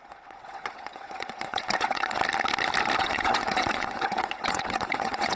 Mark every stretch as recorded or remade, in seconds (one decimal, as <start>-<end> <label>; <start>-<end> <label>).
0.0-2.2 remade; 2.2-3.0 recorded; 3.0-5.4 remade